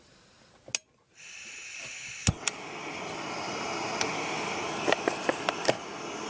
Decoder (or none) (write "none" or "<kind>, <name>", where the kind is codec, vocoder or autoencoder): none